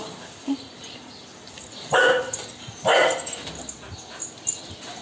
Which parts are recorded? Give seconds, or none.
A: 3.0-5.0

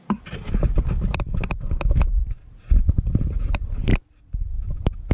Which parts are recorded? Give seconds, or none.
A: 2.2-2.7